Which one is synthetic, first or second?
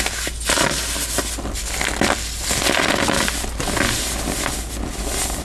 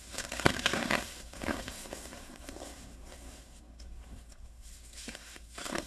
second